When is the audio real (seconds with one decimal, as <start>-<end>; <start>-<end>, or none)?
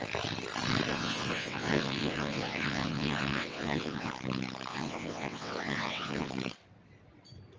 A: 0.0-0.9; 4.1-4.7; 6.3-7.6